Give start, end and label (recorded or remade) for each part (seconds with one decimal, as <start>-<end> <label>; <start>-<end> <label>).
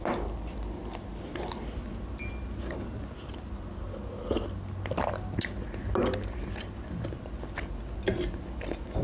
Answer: 0.0-9.0 recorded